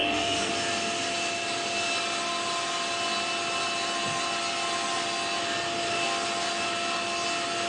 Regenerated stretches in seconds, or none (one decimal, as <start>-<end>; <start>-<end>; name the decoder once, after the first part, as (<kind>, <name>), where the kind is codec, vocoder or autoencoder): 0.0-0.5 (codec, SNAC)